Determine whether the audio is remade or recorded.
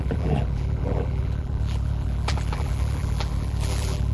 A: remade